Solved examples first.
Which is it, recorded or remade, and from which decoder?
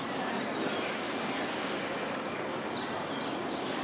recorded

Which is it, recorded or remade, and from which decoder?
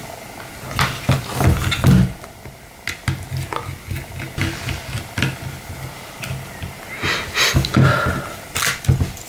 recorded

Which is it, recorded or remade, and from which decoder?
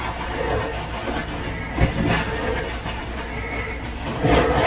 recorded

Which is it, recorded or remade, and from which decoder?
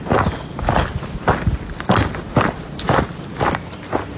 recorded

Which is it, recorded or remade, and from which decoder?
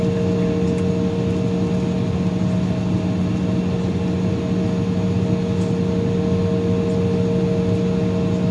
recorded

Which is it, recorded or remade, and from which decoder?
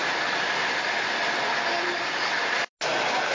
recorded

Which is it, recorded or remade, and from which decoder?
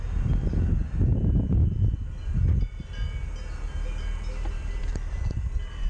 recorded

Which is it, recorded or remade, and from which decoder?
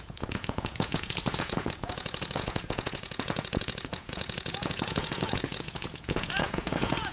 remade, vocoder, Vocos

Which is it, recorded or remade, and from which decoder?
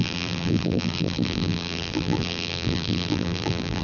remade, vocoder, BigVGAN v2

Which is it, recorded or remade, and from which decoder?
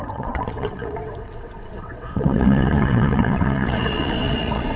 remade, vocoder, WaveNeXt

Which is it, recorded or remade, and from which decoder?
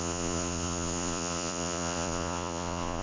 remade, vocoder, Vocos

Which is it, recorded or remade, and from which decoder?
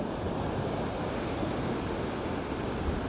recorded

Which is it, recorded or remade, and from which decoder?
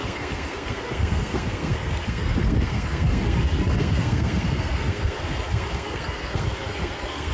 remade, codec, SNAC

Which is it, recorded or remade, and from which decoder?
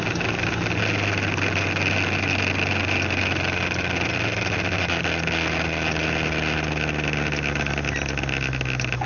recorded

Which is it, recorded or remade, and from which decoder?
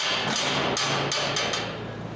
recorded